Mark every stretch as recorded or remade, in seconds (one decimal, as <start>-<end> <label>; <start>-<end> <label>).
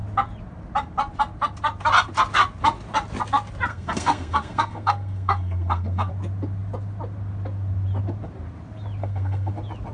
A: 0.0-3.7 recorded; 3.7-6.1 remade; 6.1-9.0 recorded; 9.0-9.5 remade; 9.5-9.9 recorded